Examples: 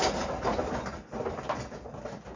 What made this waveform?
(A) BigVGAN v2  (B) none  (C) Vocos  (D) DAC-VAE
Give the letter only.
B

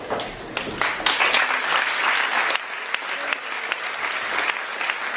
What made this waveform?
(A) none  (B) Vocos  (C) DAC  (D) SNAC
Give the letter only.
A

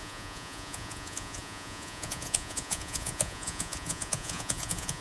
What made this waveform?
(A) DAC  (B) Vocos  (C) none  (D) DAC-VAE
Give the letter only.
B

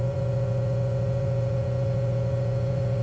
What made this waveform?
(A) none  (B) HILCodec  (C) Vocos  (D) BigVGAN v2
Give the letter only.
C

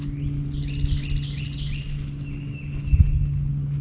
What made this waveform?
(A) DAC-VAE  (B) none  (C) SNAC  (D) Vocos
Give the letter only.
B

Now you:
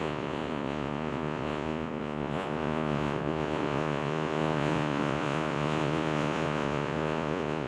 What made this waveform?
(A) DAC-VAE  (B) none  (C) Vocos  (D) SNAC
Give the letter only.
C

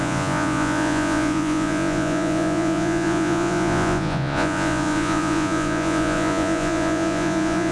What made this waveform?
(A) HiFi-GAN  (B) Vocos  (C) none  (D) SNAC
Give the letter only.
B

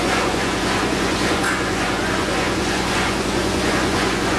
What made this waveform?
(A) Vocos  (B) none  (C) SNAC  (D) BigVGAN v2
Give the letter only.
A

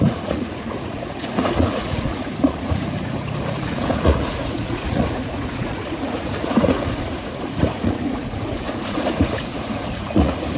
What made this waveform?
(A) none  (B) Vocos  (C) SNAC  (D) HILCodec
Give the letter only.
B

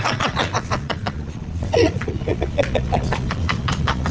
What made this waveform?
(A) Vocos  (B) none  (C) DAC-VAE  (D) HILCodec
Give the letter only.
A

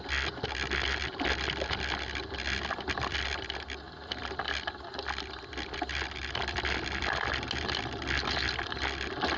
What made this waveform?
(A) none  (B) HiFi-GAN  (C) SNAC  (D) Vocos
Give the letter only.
A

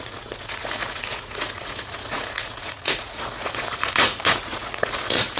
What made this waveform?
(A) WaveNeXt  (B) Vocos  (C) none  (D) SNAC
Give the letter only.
B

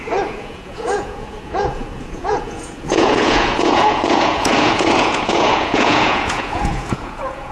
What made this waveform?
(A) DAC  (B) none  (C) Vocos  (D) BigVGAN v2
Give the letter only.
C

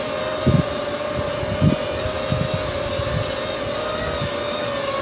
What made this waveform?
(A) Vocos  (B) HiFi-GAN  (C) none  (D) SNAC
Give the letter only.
C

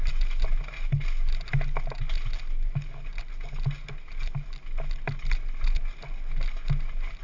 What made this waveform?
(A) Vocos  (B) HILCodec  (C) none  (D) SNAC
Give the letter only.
C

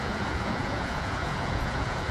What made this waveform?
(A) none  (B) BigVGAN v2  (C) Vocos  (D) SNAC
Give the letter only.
C